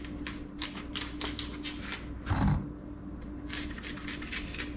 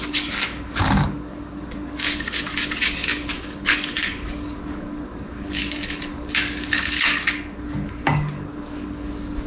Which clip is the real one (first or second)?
first